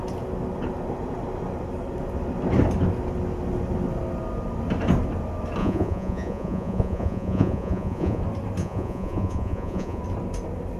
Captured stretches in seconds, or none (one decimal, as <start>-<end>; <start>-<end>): 0.0-5.6; 8.2-8.6; 10.0-10.8